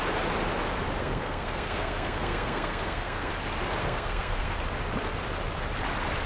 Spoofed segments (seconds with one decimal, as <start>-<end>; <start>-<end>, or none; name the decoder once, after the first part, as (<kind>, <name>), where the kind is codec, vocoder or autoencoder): 1.0-3.3 (codec, SNAC); 3.8-4.6